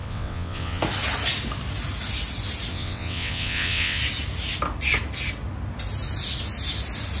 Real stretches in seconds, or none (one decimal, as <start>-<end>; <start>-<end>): 0.8-2.7; 4.0-7.2